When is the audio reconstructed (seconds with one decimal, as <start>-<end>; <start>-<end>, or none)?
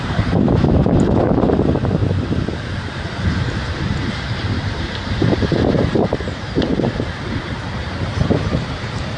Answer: 0.0-2.0; 3.7-9.2